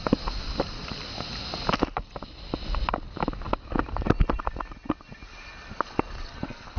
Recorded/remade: recorded